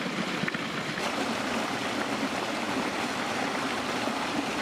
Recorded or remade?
recorded